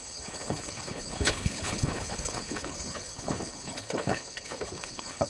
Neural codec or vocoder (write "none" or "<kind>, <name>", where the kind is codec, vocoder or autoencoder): codec, HILCodec